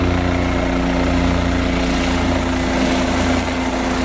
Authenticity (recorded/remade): recorded